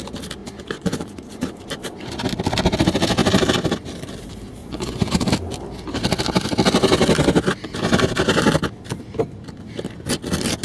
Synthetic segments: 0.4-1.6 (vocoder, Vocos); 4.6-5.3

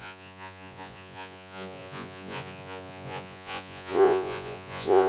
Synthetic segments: 0.0-5.1 (vocoder, Vocos)